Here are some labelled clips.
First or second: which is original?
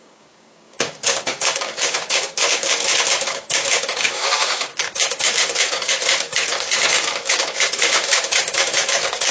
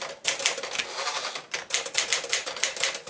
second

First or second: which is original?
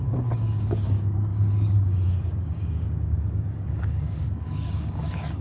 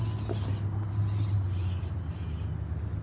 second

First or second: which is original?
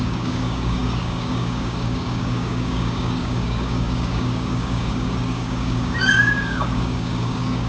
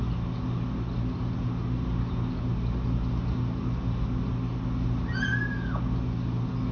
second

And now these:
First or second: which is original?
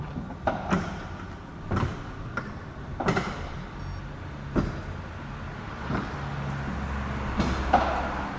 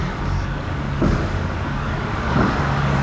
first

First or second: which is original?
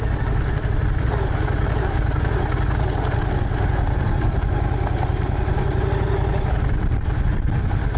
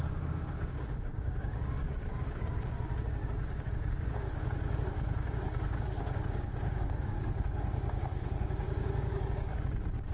first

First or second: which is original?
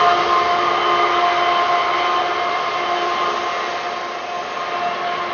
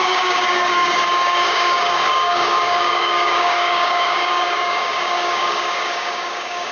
first